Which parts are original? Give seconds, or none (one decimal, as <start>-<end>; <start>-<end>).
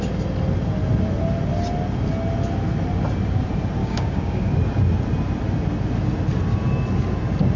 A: 0.0-3.8; 4.5-7.6